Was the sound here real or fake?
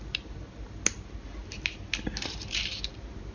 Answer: real